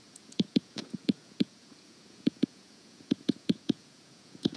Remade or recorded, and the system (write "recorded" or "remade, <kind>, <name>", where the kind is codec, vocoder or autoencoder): remade, vocoder, Vocos